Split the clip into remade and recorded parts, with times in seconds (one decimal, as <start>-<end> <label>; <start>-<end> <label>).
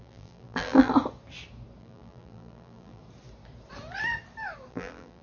0.0-0.9 remade; 0.9-1.8 recorded; 1.8-3.0 remade; 3.0-4.7 recorded; 4.7-5.2 remade